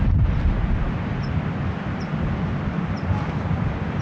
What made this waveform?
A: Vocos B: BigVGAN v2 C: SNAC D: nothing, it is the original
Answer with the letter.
D